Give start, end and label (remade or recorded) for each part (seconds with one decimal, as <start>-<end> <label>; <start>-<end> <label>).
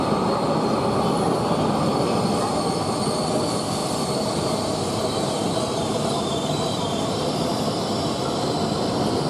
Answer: 0.0-2.5 recorded; 2.5-3.2 remade; 3.2-3.8 recorded; 3.8-7.6 remade; 7.6-9.3 recorded